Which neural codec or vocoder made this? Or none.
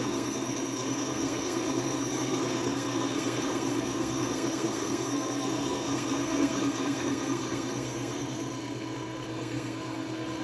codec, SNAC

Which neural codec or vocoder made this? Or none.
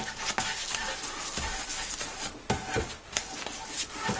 none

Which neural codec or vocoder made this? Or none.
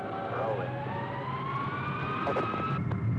none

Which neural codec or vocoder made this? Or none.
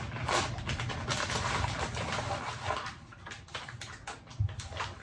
none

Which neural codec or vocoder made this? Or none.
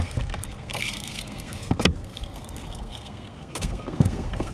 codec, SNAC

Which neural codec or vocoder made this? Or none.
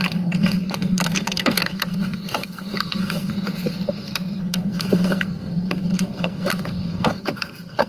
codec, SNAC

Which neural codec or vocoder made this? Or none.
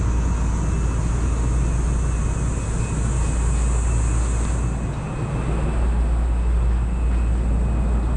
none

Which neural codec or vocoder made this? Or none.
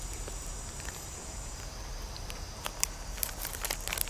vocoder, BigVGAN v2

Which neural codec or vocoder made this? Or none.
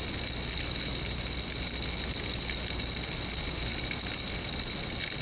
none